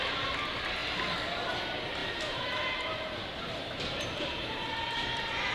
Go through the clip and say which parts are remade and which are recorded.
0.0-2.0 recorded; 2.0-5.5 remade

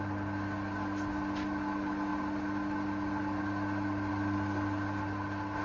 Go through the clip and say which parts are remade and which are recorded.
0.0-5.6 recorded

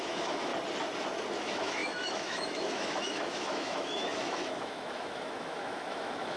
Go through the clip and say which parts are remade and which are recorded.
0.0-0.5 remade; 0.5-1.4 recorded; 1.4-6.4 remade

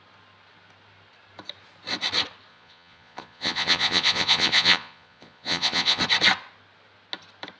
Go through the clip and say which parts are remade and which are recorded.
0.0-2.5 recorded; 2.5-6.0 remade; 6.0-7.6 recorded

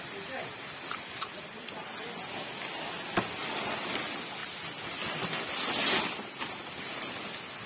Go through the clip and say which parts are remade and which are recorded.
0.0-7.7 recorded

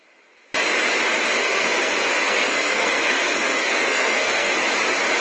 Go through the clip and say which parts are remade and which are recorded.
0.0-1.4 recorded; 1.4-4.5 remade; 4.5-5.2 recorded

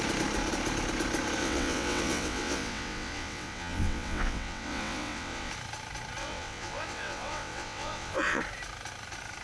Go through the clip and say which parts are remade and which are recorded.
0.0-1.4 recorded; 1.4-5.5 remade; 5.5-6.2 recorded; 6.2-8.4 remade; 8.4-9.4 recorded

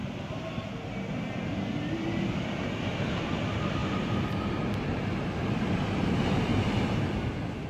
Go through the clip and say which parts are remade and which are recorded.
0.0-3.8 recorded; 3.8-5.4 remade; 5.4-6.5 recorded; 6.5-7.3 remade; 7.3-7.7 recorded